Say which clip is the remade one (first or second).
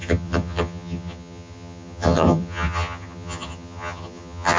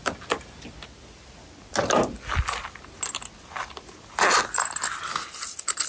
first